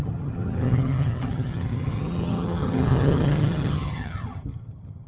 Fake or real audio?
fake